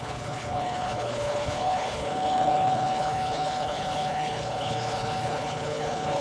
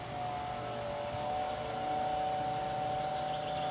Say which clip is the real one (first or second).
second